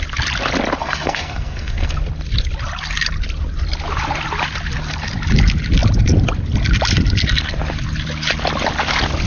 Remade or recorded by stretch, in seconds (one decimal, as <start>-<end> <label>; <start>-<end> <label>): 0.0-0.8 recorded; 0.8-2.0 remade; 2.0-9.3 recorded